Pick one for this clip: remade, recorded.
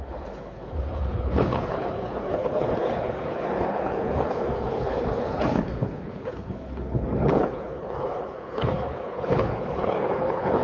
remade